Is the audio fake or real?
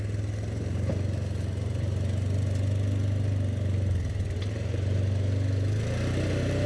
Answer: real